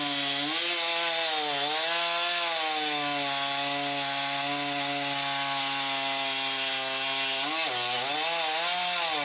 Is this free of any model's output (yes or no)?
yes